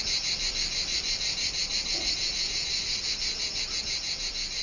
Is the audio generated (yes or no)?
no